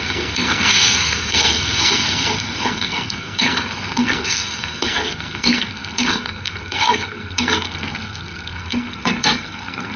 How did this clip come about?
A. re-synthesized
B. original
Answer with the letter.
A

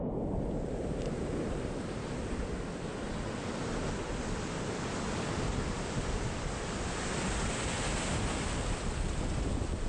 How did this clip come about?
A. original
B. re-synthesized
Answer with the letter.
A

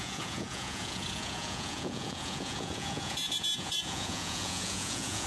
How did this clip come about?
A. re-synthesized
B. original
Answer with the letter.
A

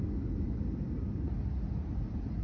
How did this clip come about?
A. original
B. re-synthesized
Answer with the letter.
A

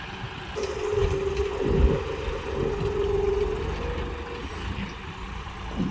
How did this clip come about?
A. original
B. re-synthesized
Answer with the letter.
A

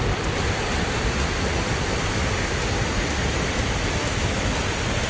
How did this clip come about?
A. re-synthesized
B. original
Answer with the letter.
B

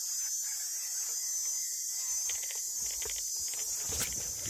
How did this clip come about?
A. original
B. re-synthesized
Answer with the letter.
A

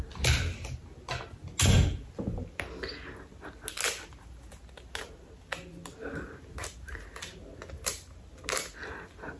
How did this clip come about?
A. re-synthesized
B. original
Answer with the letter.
B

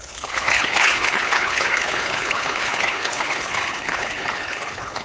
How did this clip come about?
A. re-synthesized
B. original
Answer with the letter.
A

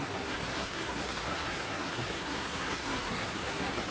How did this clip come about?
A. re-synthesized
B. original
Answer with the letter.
A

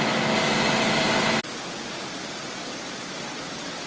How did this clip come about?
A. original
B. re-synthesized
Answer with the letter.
A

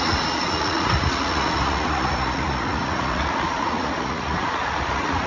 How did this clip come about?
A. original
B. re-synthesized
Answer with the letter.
B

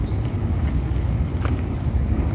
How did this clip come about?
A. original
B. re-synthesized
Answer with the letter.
B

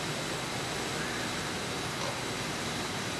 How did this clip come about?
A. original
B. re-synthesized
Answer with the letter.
A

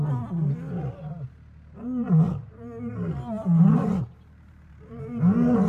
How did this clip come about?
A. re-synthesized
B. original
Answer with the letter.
B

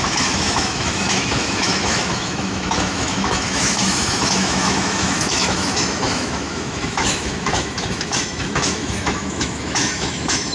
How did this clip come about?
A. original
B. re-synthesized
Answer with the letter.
B